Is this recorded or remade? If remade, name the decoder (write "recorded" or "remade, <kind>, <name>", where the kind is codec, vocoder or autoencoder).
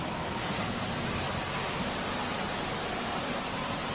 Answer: recorded